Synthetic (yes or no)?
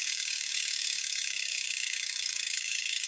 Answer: yes